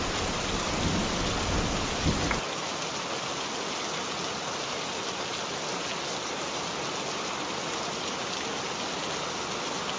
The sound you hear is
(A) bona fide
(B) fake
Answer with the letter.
A